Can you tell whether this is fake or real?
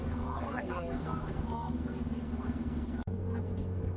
fake